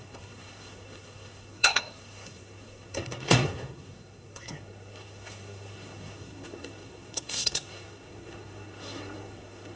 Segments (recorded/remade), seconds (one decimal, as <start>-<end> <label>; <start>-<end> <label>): 0.0-9.8 remade